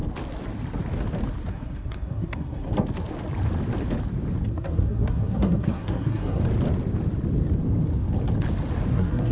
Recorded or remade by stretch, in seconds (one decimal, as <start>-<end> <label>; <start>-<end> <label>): 0.0-1.5 recorded; 1.5-2.7 remade; 2.7-4.5 recorded; 4.5-6.4 remade; 6.4-8.9 recorded; 8.9-9.3 remade